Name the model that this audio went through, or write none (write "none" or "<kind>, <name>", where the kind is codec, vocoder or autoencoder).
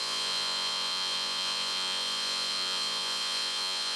vocoder, Vocos